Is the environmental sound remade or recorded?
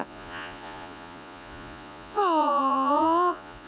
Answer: remade